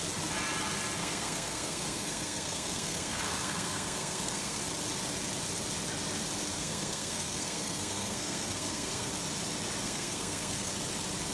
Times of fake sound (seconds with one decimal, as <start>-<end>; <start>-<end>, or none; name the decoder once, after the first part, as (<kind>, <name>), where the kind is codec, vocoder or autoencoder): 1.0-4.6 (codec, SNAC); 6.6-9.1; 9.8-10.7